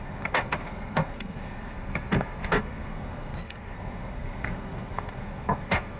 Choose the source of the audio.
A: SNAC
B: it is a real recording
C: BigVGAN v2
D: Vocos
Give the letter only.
A